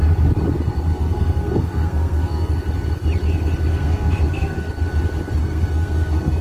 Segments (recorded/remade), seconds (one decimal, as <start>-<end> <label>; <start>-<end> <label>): 0.0-0.9 recorded; 0.9-2.5 remade; 2.5-3.7 recorded; 3.7-4.7 remade; 4.7-5.4 recorded; 5.4-6.4 remade

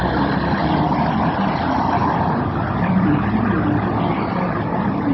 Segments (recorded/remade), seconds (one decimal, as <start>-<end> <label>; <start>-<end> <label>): 0.0-5.1 recorded

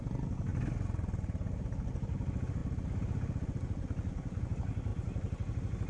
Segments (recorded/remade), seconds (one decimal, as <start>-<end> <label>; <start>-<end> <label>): 0.0-5.9 recorded

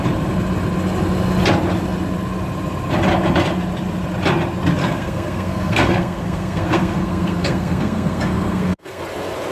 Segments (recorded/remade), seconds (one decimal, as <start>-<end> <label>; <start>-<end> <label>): 0.0-4.8 recorded; 4.8-9.0 remade; 9.0-9.5 recorded

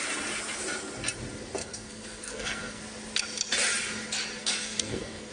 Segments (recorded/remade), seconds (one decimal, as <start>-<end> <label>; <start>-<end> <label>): 0.0-1.6 recorded; 1.6-2.8 remade; 2.8-4.4 recorded; 4.4-5.3 remade

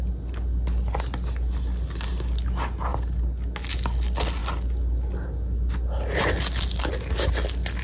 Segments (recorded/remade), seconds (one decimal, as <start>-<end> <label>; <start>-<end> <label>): 0.0-7.8 recorded

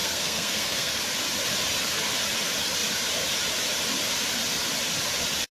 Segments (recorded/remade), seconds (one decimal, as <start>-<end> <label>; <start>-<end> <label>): 0.0-1.0 remade; 1.0-5.5 recorded

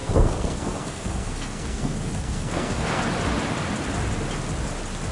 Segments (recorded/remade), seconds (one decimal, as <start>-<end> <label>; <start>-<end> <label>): 0.0-3.0 remade; 3.0-5.1 recorded